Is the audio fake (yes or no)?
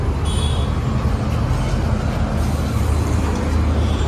no